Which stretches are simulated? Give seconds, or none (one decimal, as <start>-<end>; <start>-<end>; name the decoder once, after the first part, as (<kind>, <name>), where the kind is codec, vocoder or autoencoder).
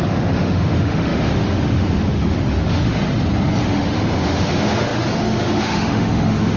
0.0-3.0 (autoencoder, DAC-VAE); 3.6-6.6